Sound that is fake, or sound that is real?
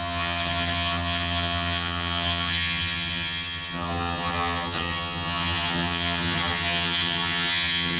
fake